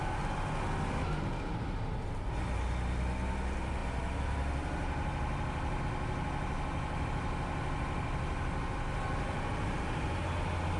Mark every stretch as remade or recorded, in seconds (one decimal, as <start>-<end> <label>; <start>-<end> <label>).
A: 0.0-10.8 recorded